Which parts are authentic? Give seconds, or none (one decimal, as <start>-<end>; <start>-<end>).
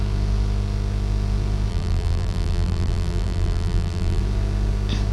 0.0-1.7; 4.2-5.1